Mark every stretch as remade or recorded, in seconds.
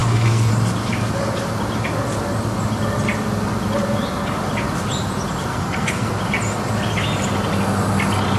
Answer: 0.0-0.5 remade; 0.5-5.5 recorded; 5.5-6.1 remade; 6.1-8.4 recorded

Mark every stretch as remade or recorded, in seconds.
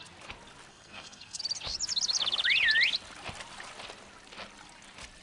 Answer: 0.0-0.7 recorded; 0.7-1.4 remade; 1.4-5.2 recorded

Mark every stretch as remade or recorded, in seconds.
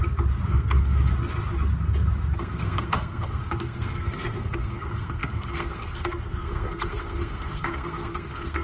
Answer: 0.0-0.5 recorded; 0.5-1.1 remade; 1.1-2.4 recorded; 2.4-8.6 remade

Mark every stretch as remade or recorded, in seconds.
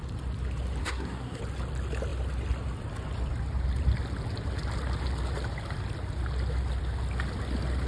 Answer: 0.0-0.8 recorded; 0.8-1.4 remade; 1.4-7.9 recorded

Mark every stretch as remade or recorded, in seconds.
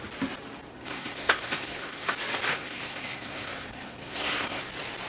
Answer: 0.0-0.7 recorded; 0.7-2.1 remade; 2.1-2.5 recorded; 2.5-4.6 remade; 4.6-5.1 recorded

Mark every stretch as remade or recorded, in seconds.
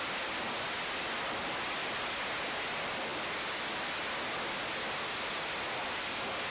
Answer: 0.0-6.5 recorded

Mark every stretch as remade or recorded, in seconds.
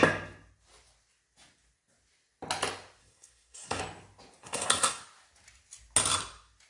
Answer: 0.0-3.0 recorded; 3.0-3.8 remade; 3.8-4.4 recorded; 4.4-5.0 remade; 5.0-6.7 recorded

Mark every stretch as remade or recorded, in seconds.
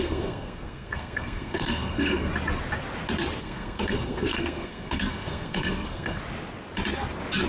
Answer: 0.0-2.3 remade; 2.3-3.4 recorded; 3.4-6.2 remade; 6.2-7.5 recorded